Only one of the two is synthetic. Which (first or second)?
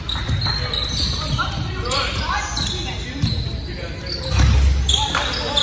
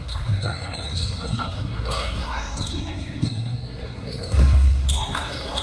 second